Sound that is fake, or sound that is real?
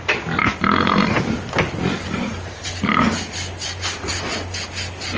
real